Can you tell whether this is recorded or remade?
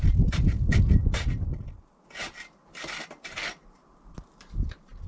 recorded